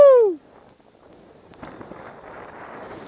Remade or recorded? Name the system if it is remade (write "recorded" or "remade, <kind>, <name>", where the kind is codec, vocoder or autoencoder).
recorded